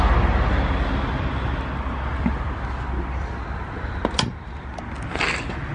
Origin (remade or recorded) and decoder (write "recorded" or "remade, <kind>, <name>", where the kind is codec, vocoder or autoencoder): recorded